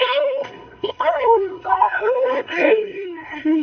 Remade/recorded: remade